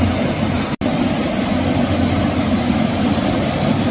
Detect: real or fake real